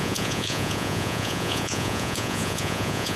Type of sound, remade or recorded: remade